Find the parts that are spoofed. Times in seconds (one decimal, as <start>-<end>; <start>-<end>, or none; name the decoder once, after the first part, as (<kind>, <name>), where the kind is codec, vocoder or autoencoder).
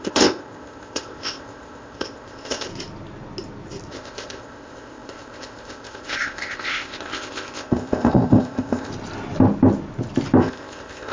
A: 0.0-2.7 (codec, ZipCodec); 3.9-8.9; 10.4-11.1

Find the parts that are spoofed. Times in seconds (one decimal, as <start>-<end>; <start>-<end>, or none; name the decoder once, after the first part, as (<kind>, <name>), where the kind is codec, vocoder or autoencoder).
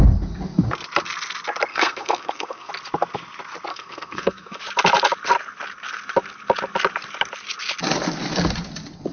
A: 1.7-2.7 (codec, SNAC); 3.7-4.6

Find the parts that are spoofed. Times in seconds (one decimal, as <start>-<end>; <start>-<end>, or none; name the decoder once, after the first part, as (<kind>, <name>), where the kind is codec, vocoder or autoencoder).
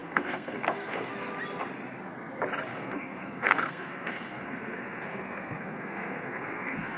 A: 0.0-1.1 (codec, SNAC); 2.7-7.0